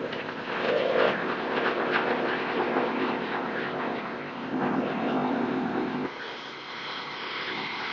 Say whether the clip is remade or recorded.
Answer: remade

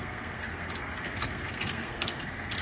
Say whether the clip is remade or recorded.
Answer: remade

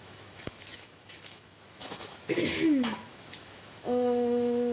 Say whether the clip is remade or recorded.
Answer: remade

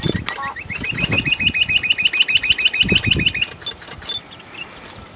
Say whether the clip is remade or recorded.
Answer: recorded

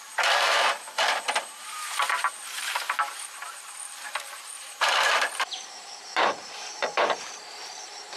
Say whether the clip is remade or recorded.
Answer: remade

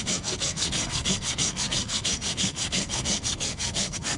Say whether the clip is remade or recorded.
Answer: remade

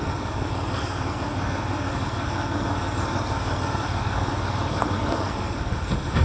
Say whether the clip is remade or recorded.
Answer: remade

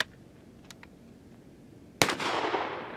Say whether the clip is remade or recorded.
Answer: recorded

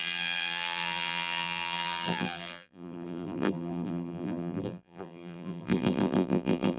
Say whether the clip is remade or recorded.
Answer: remade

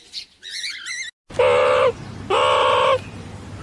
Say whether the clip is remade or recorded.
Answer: recorded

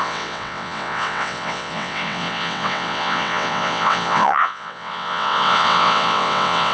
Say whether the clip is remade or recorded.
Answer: remade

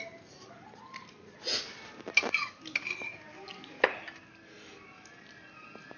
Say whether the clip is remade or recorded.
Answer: recorded